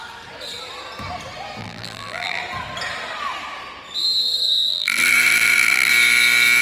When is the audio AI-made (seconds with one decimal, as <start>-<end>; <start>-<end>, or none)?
1.6-2.4; 4.7-5.9